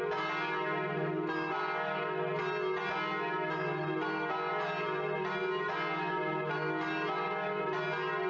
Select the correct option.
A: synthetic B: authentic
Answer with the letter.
B